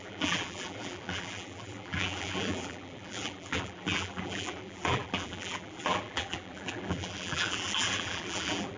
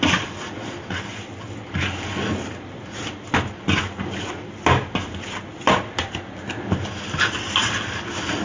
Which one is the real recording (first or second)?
second